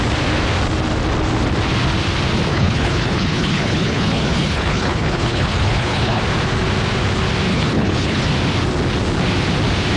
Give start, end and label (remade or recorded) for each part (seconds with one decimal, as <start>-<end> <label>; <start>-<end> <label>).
0.0-2.5 recorded; 2.5-6.2 remade; 6.2-7.5 recorded; 7.5-8.3 remade; 8.3-10.0 recorded